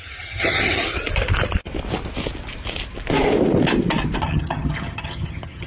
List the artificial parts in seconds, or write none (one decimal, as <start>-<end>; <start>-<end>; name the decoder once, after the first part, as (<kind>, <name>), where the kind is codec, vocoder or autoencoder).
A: 0.0-0.8 (vocoder, HiFi-GAN); 4.2-5.7